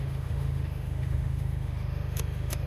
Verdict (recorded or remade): remade